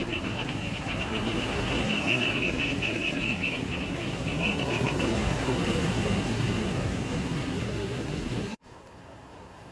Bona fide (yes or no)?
no